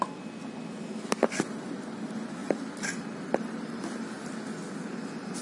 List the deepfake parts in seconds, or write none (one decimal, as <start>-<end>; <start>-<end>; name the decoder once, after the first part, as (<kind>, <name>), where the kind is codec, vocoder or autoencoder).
2.4-4.2 (vocoder, BigVGAN v2)